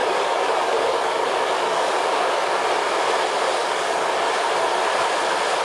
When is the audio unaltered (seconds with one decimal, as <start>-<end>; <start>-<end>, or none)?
2.6-3.6; 4.4-5.6